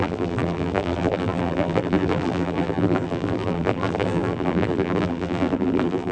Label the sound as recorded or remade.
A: remade